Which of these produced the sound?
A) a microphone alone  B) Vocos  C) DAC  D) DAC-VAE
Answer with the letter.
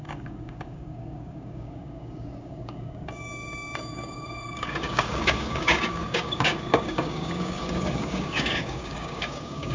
C